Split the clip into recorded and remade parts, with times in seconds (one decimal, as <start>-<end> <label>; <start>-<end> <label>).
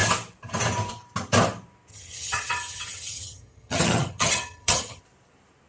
0.0-1.9 recorded; 1.9-5.0 remade; 5.0-5.7 recorded